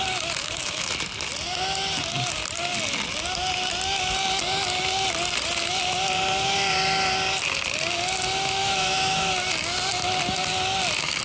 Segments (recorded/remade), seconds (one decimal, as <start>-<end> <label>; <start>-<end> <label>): 0.0-0.4 recorded; 0.4-0.9 remade; 0.9-8.6 recorded; 8.6-9.3 remade; 9.3-11.2 recorded